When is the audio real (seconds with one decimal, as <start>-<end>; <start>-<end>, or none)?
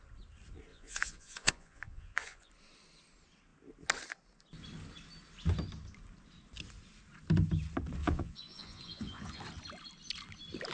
0.0-0.7; 2.5-8.0; 9.4-10.7